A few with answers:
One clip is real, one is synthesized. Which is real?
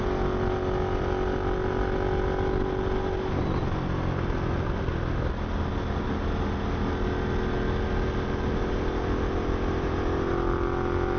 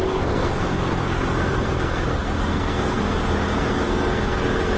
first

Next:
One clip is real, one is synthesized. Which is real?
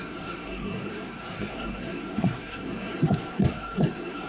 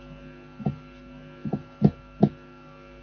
second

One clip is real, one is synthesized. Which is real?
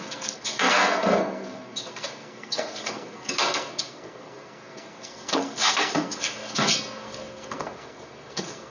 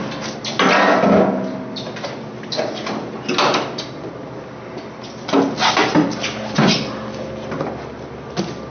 second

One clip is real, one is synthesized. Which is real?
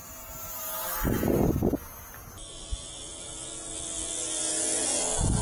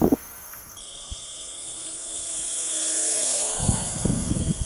first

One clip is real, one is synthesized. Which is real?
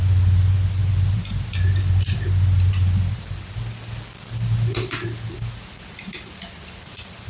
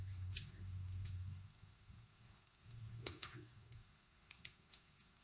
first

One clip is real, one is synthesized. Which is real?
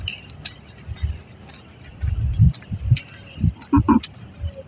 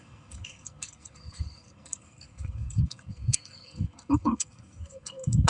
first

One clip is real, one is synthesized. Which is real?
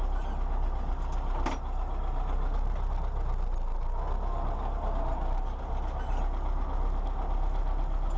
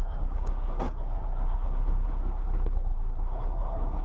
first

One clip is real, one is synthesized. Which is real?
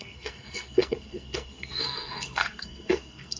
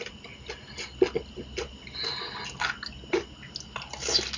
second